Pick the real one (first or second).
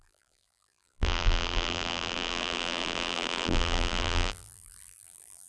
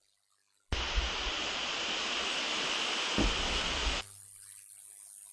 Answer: second